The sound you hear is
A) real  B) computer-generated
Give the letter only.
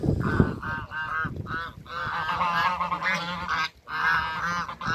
A